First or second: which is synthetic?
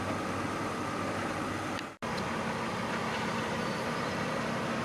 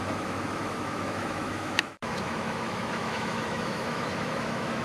second